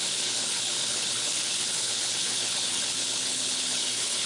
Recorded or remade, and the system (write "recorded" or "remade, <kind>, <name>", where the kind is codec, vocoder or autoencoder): remade, codec, HILCodec